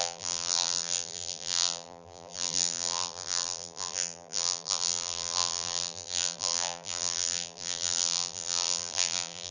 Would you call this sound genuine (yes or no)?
no